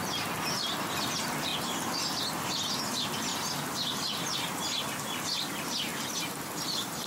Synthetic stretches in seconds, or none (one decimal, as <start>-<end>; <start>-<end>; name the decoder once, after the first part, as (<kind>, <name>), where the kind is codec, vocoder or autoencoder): none